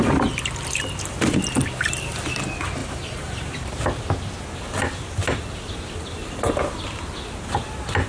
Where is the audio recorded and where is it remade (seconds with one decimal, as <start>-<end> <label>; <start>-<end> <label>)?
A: 0.0-2.8 recorded; 2.8-3.8 remade; 3.8-8.1 recorded